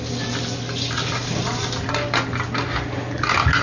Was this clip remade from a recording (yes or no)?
no